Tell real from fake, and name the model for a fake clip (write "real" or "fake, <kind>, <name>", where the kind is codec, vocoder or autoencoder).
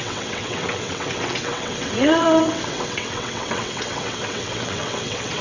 fake, vocoder, WaveNeXt